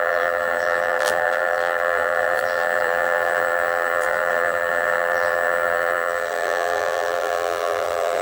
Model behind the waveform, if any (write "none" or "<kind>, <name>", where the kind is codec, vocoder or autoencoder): vocoder, BigVGAN v2